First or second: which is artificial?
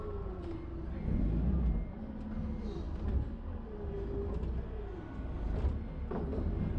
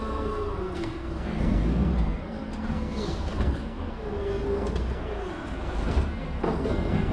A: second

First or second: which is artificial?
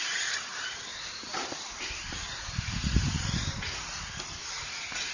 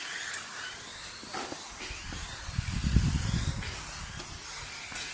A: first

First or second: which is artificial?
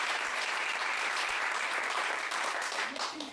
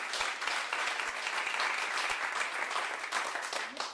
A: first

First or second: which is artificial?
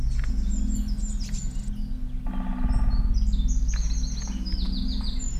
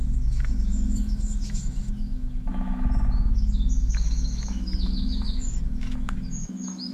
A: second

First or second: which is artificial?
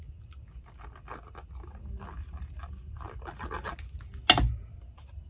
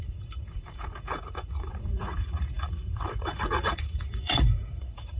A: second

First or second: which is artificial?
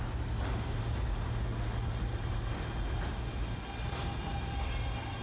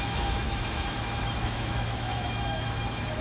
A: second